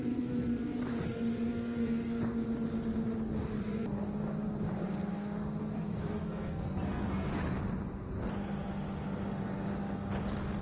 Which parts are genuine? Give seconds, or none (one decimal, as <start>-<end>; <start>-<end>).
0.0-1.5; 2.2-5.6; 7.3-10.6